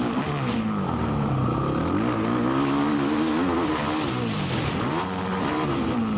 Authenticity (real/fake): real